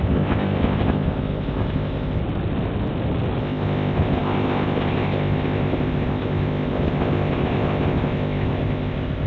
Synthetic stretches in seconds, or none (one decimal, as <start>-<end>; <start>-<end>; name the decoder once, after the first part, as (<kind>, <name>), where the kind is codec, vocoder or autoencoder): 0.0-2.2 (codec, ZipCodec); 3.4-9.3